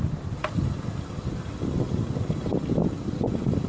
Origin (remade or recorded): recorded